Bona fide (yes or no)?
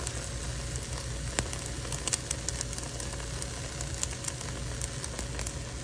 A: yes